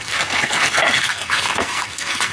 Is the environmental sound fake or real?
fake